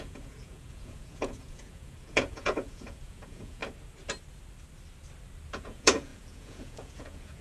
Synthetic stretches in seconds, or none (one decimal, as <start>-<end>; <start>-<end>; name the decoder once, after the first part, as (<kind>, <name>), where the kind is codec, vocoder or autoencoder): 0.0-3.6 (vocoder, Vocos); 5.5-7.4